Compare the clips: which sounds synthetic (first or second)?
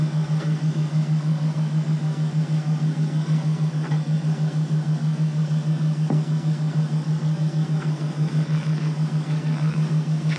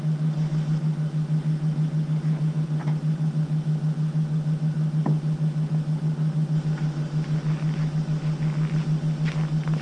first